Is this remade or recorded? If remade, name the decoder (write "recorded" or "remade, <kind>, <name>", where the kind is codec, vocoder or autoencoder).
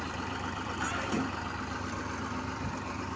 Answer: remade, vocoder, BigVGAN v2